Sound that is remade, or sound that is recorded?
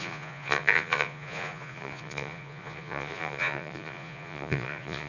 remade